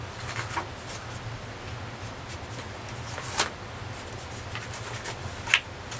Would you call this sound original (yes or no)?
yes